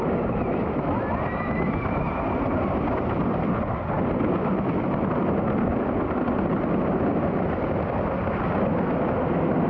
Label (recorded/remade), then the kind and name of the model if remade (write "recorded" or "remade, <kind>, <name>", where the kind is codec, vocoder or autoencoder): recorded